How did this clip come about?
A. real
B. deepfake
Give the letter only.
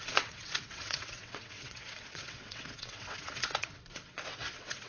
B